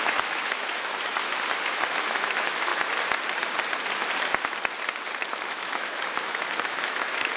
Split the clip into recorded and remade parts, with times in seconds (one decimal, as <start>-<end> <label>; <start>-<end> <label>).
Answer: 0.0-1.1 remade; 1.1-1.7 recorded; 1.7-2.7 remade; 2.7-5.5 recorded; 5.5-7.4 remade